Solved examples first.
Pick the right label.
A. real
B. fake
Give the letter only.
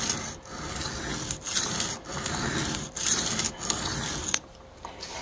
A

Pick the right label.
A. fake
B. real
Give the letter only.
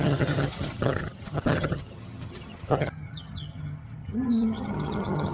A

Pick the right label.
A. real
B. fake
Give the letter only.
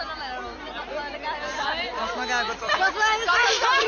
A